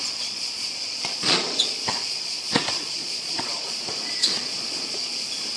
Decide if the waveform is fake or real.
fake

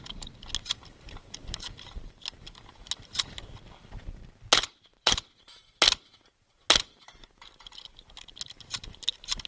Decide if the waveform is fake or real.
real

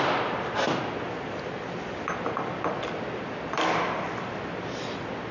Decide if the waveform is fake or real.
real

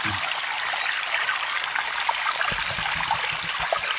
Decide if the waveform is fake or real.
real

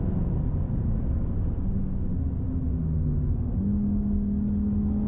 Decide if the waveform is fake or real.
real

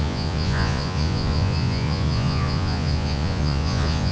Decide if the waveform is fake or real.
fake